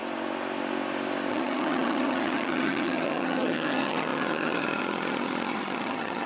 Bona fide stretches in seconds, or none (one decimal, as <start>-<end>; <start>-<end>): 0.0-1.3

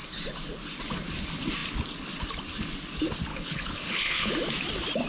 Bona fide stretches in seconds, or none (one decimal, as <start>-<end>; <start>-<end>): 0.0-3.3; 4.3-5.1

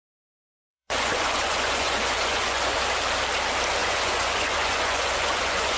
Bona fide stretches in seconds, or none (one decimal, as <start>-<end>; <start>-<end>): 0.0-0.7; 2.8-3.8

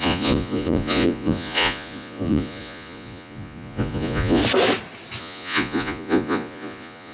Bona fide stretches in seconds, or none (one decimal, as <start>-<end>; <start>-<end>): 4.4-5.2

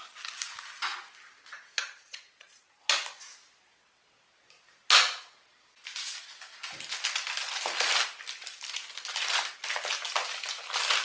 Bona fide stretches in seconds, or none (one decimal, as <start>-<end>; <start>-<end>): 0.0-1.8; 2.8-11.0

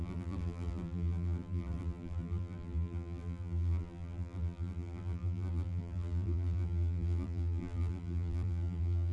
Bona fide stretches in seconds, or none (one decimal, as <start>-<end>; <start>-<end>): none

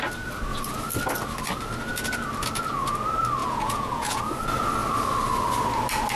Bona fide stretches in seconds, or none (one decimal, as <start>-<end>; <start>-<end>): 0.0-3.4; 4.2-6.2